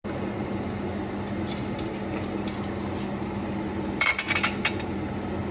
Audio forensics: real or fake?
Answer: real